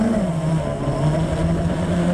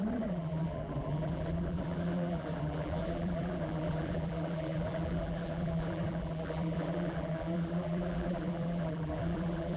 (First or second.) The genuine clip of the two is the first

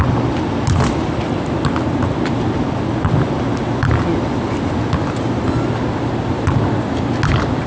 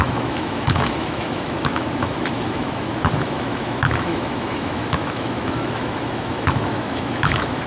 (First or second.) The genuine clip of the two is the first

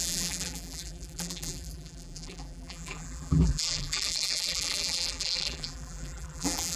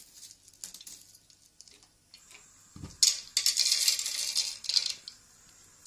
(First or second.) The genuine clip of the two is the second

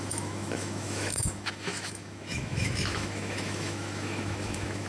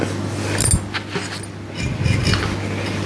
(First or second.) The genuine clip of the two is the second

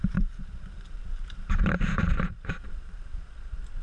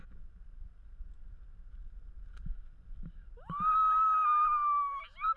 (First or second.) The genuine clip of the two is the second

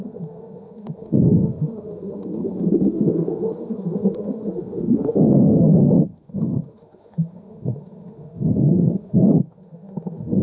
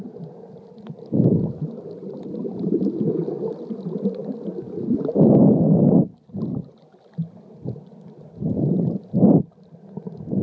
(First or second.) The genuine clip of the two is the second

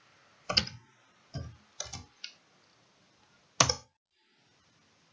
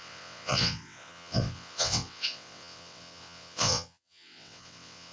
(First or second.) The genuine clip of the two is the first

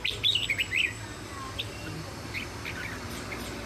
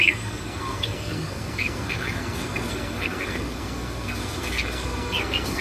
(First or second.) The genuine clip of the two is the first